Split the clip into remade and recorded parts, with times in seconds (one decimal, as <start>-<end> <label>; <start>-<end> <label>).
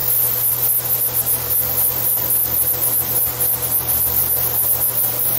0.0-5.4 recorded